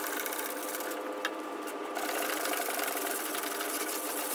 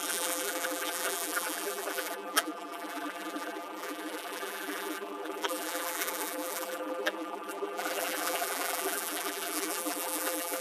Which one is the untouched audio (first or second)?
first